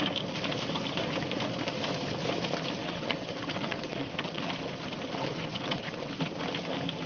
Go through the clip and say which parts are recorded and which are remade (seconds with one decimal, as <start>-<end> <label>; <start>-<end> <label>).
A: 0.0-2.8 recorded; 2.8-4.4 remade; 4.4-5.2 recorded; 5.2-6.1 remade; 6.1-7.1 recorded